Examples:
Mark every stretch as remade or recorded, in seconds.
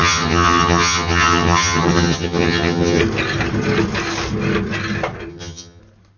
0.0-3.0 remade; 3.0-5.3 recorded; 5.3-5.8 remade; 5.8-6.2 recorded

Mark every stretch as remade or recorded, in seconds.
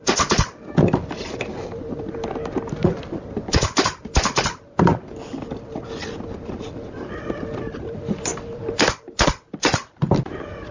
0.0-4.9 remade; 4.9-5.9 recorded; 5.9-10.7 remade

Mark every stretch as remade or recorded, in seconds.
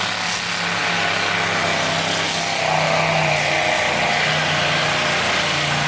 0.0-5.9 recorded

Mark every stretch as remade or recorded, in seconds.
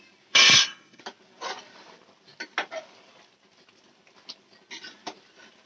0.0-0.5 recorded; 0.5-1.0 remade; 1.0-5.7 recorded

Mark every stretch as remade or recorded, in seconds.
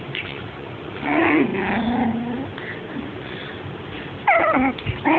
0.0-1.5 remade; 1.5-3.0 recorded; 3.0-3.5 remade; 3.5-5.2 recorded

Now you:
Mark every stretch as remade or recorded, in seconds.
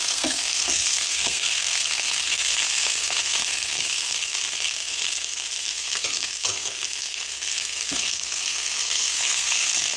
0.0-10.0 remade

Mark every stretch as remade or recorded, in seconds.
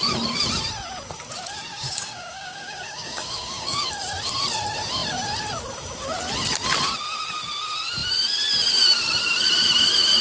0.0-1.7 recorded; 1.7-3.9 remade; 3.9-10.2 recorded